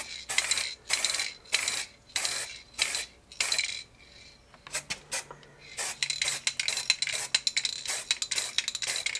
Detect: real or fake real